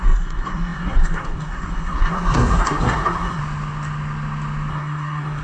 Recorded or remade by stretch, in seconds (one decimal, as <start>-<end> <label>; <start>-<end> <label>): 0.0-3.4 remade; 3.4-4.7 recorded; 4.7-5.4 remade